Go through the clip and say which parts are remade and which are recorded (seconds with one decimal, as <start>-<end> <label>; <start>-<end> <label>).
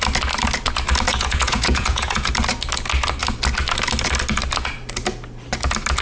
0.0-1.1 recorded; 1.1-2.3 remade; 2.3-6.0 recorded